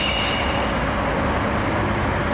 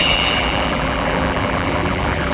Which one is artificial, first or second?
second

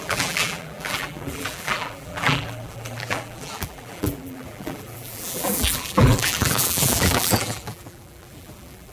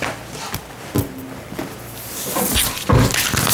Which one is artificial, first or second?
first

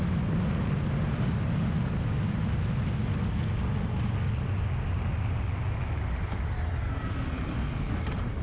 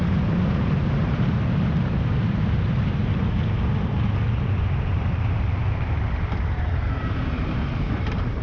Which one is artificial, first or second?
second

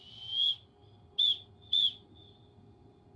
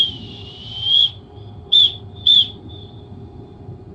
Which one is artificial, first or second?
second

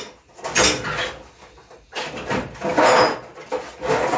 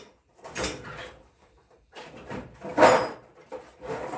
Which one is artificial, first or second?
second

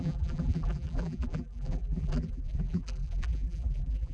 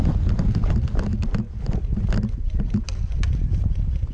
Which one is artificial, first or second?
first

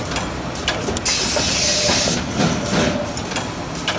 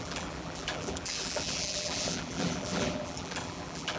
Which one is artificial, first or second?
second